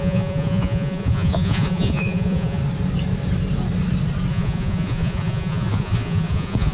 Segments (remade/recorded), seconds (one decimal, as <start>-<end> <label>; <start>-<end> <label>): 0.0-2.6 remade; 2.6-4.3 recorded; 4.3-6.7 remade